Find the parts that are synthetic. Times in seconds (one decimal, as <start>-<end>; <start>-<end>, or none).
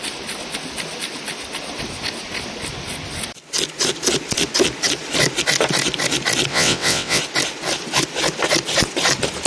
6.5-7.2